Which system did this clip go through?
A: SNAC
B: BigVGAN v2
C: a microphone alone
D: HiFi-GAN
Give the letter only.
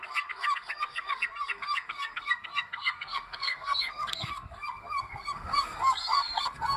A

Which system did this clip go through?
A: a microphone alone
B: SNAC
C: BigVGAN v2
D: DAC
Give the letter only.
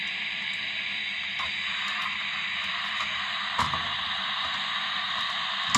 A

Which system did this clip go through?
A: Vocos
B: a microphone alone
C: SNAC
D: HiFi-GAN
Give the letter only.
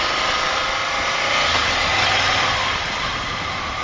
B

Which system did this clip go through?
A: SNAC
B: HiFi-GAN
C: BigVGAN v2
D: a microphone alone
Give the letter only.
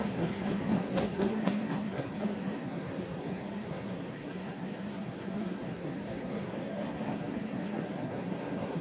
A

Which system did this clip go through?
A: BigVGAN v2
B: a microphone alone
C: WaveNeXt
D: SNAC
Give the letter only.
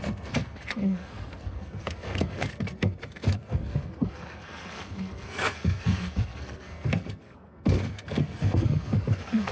D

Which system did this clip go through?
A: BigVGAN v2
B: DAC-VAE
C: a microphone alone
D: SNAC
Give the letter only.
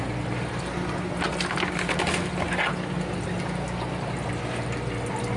C